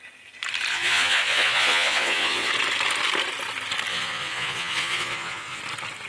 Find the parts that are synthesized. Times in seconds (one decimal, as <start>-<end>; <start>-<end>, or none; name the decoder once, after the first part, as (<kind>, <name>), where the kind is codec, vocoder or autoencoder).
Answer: 0.7-2.5 (vocoder, Vocos); 3.9-5.6